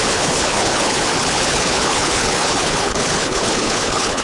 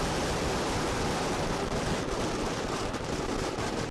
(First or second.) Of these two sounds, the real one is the second